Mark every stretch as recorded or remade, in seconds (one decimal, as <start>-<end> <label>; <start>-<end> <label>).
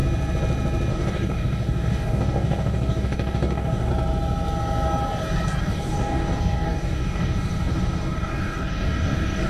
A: 0.0-0.9 recorded; 0.9-3.9 remade; 3.9-5.6 recorded; 5.6-9.5 remade